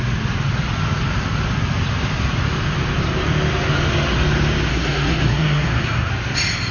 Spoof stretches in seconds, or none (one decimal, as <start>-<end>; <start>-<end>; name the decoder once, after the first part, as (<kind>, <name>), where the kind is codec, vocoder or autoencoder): 4.7-6.1 (codec, SNAC)